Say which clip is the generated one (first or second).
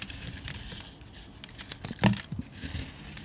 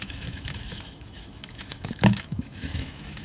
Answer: second